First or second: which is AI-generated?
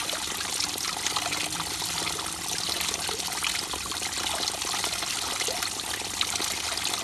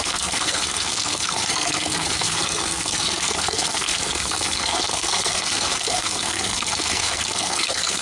second